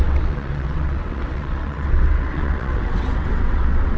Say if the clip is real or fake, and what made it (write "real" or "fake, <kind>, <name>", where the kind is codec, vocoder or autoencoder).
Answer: fake, vocoder, WaveNeXt